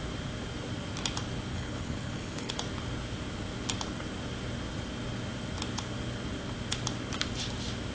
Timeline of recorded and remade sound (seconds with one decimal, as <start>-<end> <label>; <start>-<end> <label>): 0.0-1.5 recorded; 1.5-2.5 remade; 2.5-7.9 recorded